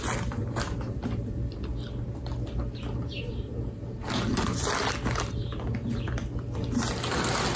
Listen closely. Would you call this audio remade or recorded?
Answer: recorded